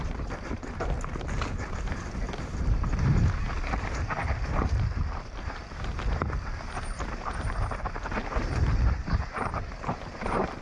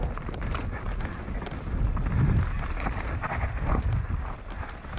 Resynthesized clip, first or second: first